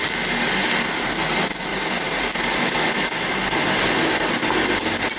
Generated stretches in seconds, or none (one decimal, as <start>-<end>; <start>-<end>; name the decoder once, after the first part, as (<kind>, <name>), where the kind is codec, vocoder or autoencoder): none